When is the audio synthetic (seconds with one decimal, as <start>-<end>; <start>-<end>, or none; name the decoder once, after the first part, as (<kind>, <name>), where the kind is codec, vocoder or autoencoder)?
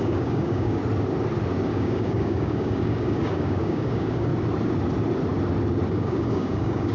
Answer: 0.0-0.8 (codec, DAC); 1.7-4.3; 5.9-6.9